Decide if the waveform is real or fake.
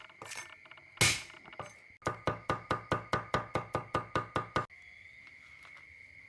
real